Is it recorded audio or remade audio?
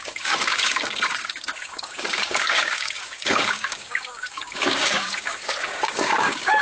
remade